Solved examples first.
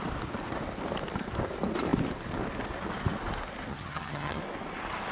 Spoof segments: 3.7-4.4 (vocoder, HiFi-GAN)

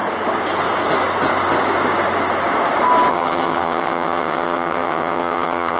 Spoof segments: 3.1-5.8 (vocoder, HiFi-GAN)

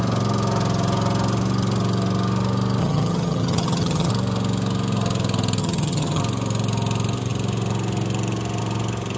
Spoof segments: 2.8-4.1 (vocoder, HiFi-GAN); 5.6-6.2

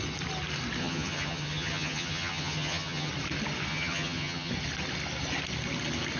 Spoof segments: 0.8-3.1 (vocoder, HiFi-GAN); 3.7-4.5

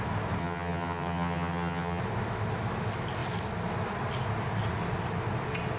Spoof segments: 0.4-2.0 (vocoder, HiFi-GAN)

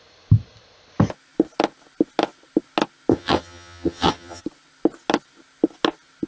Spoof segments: 3.1-4.4 (vocoder, HiFi-GAN)

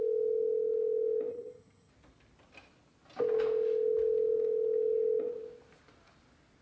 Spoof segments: 1.3-1.9 (vocoder, HiFi-GAN)